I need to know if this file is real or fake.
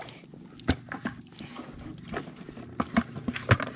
real